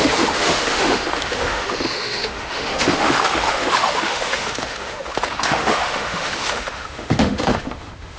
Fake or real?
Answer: fake